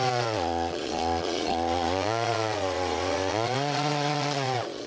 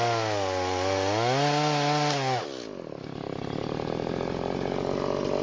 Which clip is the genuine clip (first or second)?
second